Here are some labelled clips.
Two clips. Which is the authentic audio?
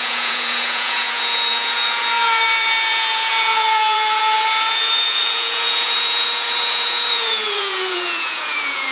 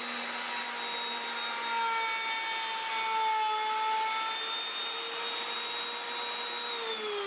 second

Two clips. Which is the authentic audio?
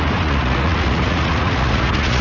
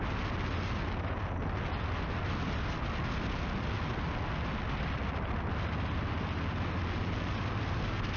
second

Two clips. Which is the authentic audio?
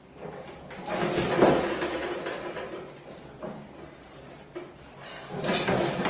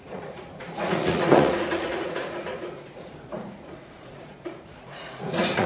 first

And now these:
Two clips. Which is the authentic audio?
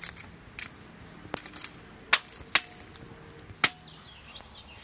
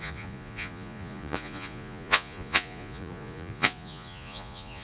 first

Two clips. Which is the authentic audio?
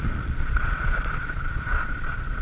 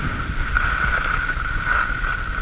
second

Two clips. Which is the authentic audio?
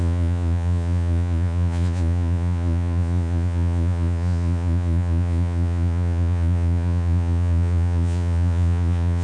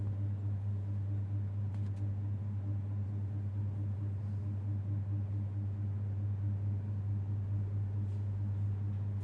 second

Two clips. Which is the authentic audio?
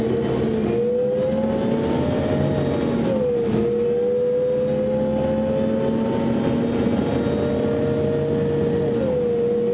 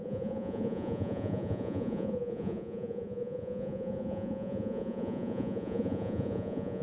first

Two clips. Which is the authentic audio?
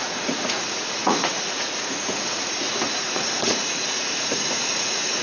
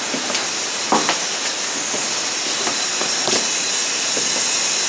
second